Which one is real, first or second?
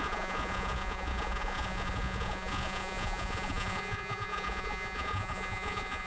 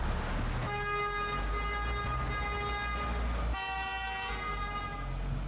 second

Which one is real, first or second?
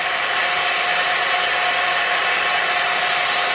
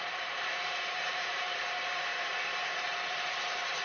first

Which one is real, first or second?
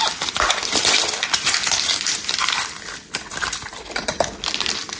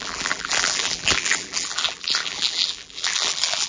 first